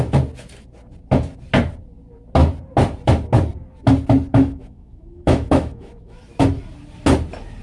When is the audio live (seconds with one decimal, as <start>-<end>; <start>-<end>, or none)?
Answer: 0.0-4.3; 6.2-7.6